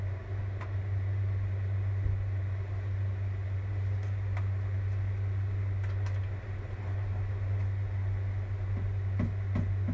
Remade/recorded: recorded